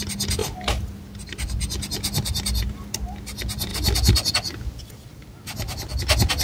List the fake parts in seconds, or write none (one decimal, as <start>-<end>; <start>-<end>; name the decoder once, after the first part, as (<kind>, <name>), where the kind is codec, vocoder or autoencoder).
0.4-2.7 (vocoder, BigVGAN v2); 3.7-4.9